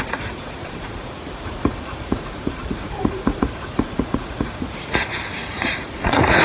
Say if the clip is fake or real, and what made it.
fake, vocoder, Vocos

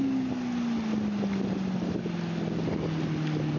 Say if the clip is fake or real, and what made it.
real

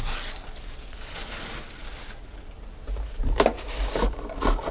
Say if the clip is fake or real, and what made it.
real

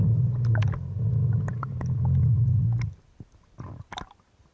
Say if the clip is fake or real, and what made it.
real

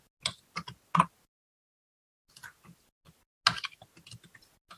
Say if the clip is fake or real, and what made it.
real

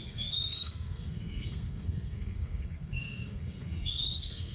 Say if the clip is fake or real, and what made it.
fake, codec, SNAC